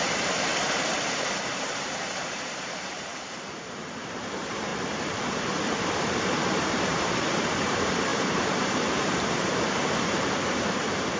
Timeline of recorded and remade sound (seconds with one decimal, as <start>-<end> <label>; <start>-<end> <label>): 0.0-0.5 remade; 0.5-1.4 recorded; 1.4-3.1 remade; 3.1-4.2 recorded; 4.2-4.7 remade; 4.7-5.8 recorded; 5.8-11.2 remade